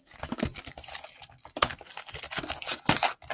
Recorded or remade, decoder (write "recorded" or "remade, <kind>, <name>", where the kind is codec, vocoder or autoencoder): recorded